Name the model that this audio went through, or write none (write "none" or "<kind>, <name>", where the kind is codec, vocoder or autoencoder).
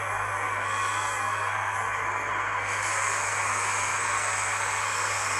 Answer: codec, SNAC